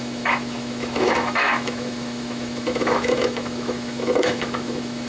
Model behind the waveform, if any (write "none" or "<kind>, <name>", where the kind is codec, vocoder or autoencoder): autoencoder, DAC-VAE